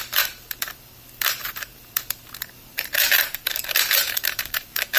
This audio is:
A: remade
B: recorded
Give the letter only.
A